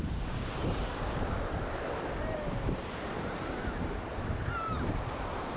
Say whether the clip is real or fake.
fake